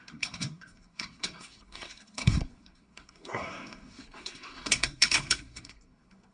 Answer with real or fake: fake